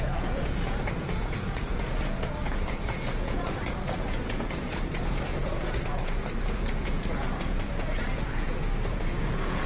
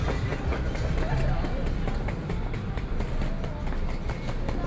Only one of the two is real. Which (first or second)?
second